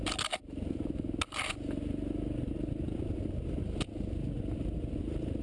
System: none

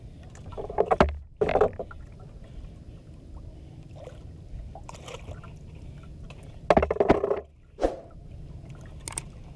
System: none